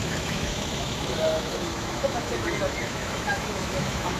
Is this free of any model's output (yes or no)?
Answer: no